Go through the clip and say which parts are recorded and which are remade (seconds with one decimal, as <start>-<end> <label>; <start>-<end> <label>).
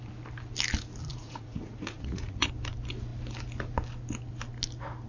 0.0-1.1 recorded; 1.1-2.5 remade; 2.5-5.1 recorded